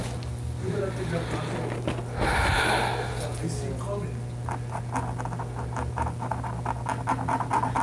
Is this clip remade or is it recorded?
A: recorded